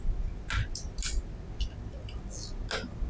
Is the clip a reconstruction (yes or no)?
no